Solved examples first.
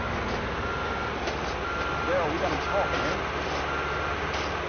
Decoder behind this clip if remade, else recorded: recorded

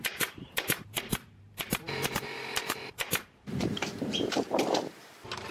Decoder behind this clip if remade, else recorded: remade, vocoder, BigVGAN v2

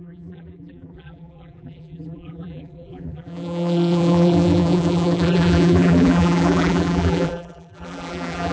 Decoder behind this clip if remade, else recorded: remade, vocoder, BigVGAN v2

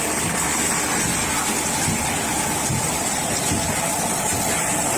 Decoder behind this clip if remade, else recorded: recorded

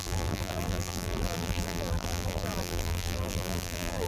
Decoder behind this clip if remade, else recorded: remade, vocoder, BigVGAN v2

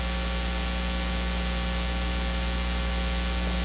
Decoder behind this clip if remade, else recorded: recorded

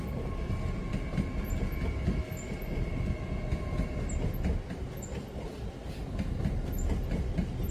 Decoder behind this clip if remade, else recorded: recorded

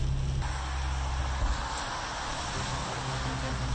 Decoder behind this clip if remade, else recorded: recorded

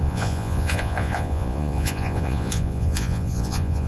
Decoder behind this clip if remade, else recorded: remade, vocoder, Vocos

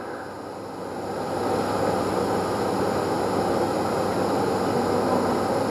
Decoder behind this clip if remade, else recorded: recorded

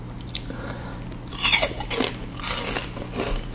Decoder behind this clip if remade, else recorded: recorded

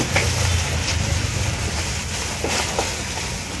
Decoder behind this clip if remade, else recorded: recorded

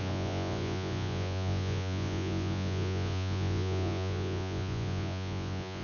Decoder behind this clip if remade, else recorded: remade, vocoder, Vocos